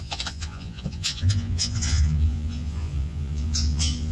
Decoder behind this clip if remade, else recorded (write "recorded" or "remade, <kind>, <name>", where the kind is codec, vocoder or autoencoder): remade, vocoder, Vocos